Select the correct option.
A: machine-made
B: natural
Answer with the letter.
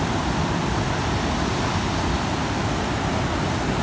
B